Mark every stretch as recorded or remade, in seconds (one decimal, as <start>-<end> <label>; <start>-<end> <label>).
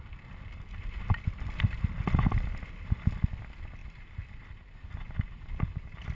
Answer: 0.0-6.1 recorded